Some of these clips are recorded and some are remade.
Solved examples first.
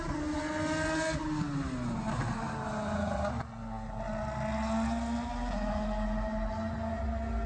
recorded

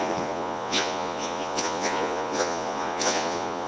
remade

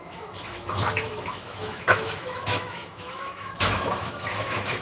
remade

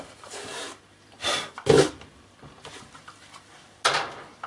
remade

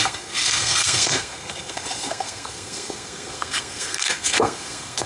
remade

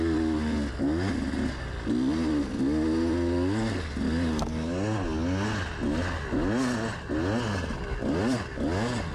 recorded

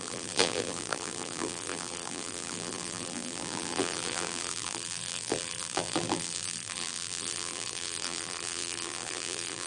remade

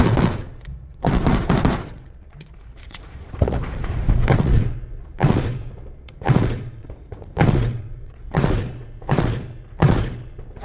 remade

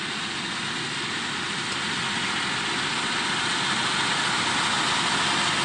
recorded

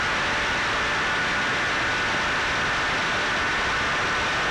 recorded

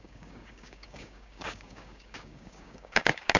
remade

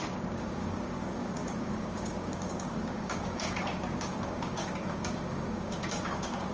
remade